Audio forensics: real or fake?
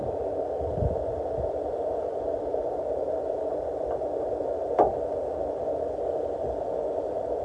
real